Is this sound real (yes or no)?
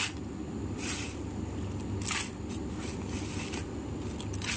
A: yes